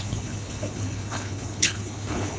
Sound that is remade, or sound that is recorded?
remade